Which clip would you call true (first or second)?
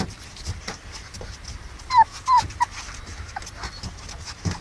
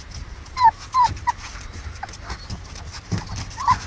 first